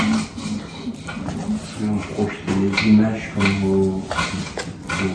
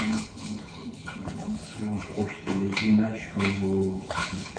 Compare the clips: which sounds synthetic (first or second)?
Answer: second